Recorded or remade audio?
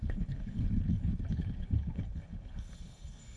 remade